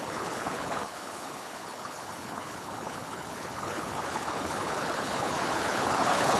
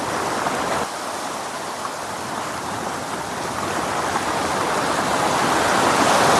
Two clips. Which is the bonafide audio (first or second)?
second